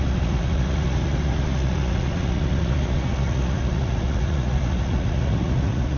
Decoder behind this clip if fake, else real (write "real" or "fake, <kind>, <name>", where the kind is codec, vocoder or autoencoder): fake, vocoder, Vocos